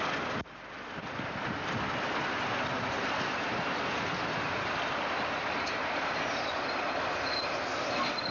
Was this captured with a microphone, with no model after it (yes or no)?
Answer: yes